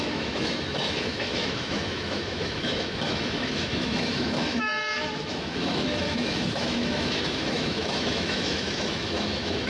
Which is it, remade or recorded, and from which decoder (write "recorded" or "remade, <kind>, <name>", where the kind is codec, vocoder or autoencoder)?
remade, autoencoder, DAC-VAE